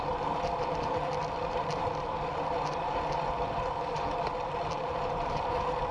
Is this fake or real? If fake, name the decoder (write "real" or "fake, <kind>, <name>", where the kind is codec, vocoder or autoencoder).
fake, vocoder, BigVGAN v2